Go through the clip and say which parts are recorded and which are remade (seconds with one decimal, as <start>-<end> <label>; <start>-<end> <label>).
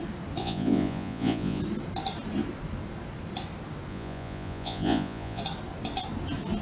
0.0-0.4 recorded; 0.4-1.6 remade; 1.6-3.9 recorded; 3.9-5.4 remade; 5.4-6.6 recorded